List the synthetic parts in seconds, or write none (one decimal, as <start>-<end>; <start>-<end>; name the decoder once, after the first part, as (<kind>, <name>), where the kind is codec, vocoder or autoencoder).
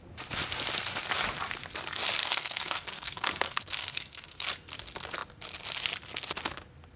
2.2-4.5 (codec, SNAC)